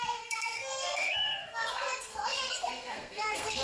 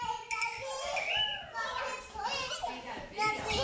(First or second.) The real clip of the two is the second